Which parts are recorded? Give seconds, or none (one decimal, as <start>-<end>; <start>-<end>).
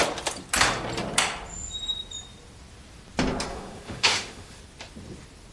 0.0-3.5; 4.6-5.5